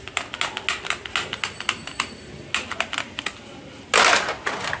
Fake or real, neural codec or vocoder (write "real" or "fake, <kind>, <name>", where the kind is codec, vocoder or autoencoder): real